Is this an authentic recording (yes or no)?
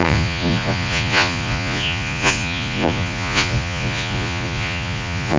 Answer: no